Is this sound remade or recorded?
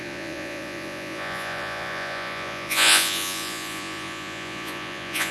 remade